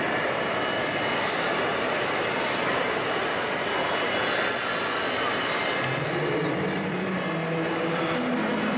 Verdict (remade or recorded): recorded